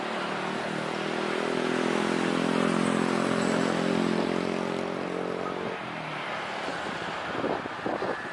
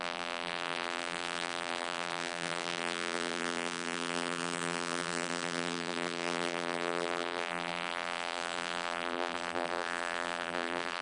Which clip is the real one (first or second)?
first